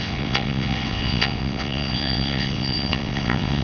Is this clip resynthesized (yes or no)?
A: yes